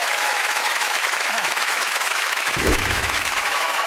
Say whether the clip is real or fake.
fake